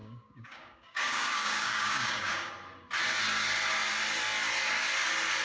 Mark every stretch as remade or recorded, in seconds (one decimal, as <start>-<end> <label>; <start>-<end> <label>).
0.0-2.5 remade; 2.5-5.4 recorded